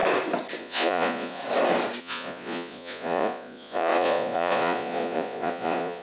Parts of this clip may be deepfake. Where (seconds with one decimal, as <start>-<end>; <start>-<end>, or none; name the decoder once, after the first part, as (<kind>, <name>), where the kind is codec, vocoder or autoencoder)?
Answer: 0.6-1.4 (vocoder, Vocos); 2.0-6.0